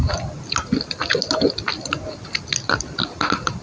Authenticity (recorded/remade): recorded